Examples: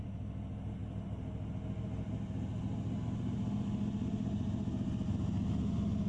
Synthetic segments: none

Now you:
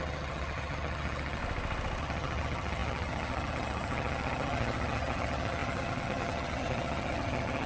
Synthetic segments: 0.0-1.4; 2.0-7.7

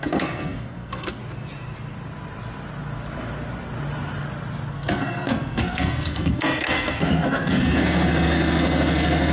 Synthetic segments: 0.0-1.2; 4.7-9.3

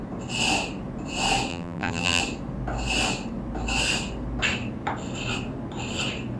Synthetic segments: 1.5-2.2

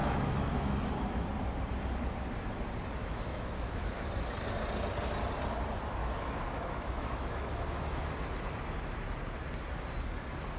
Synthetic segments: 0.0-0.9; 3.0-4.1; 6.0-8.0

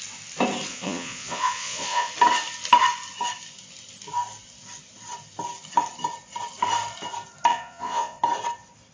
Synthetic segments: 0.7-2.1; 7.5-8.2

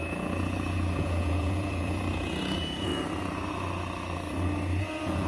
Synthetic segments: 0.0-2.9; 4.8-5.3

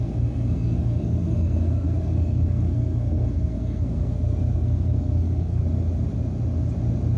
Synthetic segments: 0.0-5.6